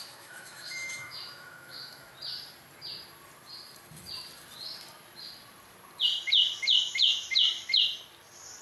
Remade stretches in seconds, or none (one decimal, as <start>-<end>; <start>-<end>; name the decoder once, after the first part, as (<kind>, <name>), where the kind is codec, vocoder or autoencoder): 0.0-2.1 (autoencoder, DAC-VAE)